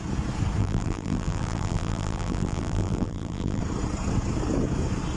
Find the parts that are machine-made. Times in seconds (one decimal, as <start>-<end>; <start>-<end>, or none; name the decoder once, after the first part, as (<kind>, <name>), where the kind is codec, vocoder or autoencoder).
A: 0.6-3.6 (vocoder, BigVGAN v2)